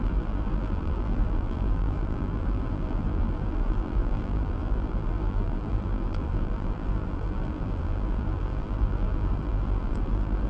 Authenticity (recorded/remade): remade